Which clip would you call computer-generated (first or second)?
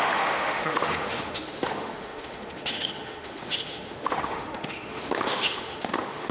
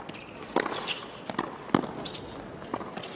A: first